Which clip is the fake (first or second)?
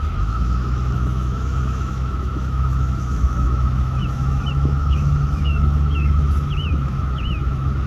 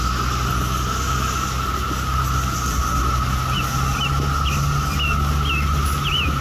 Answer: first